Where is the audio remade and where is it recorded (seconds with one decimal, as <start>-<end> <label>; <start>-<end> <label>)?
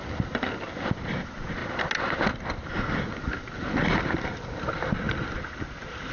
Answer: 0.0-6.1 recorded